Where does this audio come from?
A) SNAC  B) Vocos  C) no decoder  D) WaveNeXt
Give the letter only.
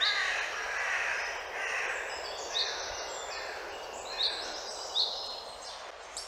C